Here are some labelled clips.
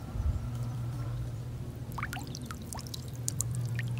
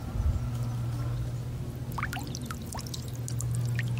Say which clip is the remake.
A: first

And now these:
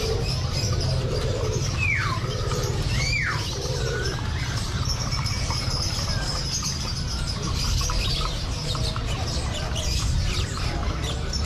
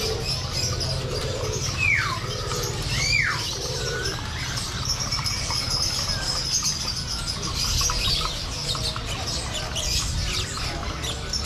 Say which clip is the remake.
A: first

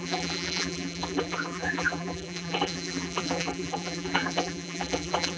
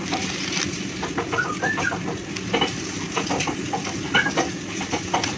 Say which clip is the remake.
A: first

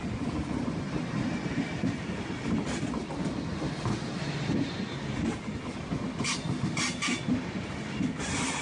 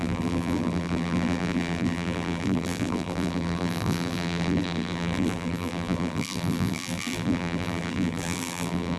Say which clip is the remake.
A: second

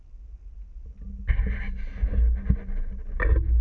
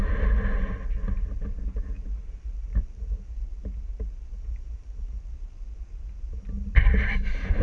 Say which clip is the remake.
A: second